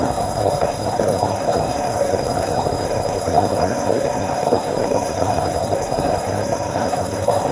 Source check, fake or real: fake